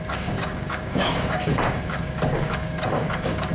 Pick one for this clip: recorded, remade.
remade